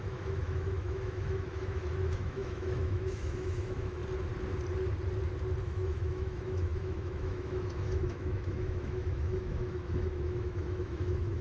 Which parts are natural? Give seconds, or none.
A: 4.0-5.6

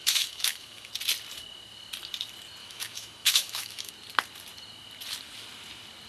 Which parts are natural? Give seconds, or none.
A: 0.9-2.6; 3.9-6.1